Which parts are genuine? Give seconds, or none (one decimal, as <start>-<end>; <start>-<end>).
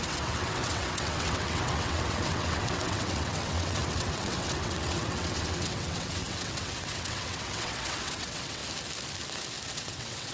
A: 8.6-9.7